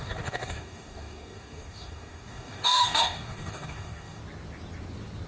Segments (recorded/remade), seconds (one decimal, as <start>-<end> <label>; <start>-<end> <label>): 0.0-4.2 remade; 4.2-5.3 recorded

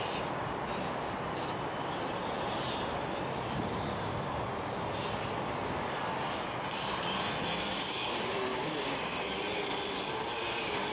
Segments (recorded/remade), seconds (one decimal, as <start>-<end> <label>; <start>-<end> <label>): 0.0-3.9 recorded; 3.9-4.4 remade; 4.4-8.5 recorded; 8.5-9.2 remade; 9.2-10.9 recorded

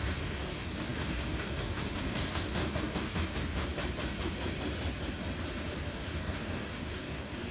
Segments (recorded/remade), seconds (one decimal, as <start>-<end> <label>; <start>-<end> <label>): 0.0-3.7 remade; 3.7-5.8 recorded; 5.8-7.5 remade

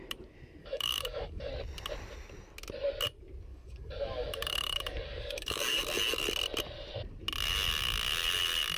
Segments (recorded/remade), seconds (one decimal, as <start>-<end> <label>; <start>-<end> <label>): 0.0-0.6 recorded; 0.6-1.5 remade; 1.5-3.5 recorded; 3.5-5.8 remade; 5.8-8.8 recorded

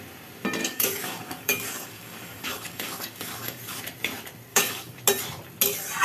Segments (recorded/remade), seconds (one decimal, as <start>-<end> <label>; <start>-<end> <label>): 0.0-0.6 recorded; 0.6-3.8 remade; 3.8-4.5 recorded; 4.5-5.0 remade; 5.0-6.0 recorded